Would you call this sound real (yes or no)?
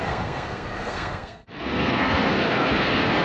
no